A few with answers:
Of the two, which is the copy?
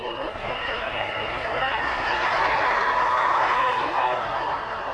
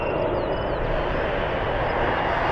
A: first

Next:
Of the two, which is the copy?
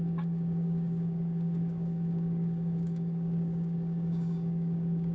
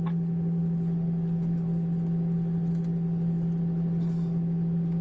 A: first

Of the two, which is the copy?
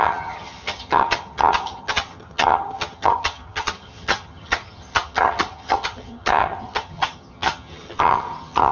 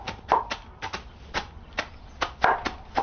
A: first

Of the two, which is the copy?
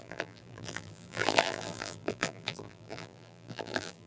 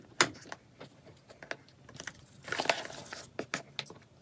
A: first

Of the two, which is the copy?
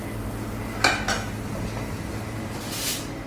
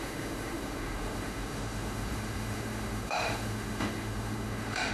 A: second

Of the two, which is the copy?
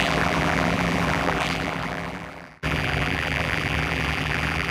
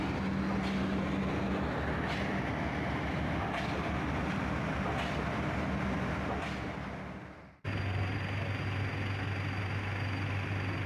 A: first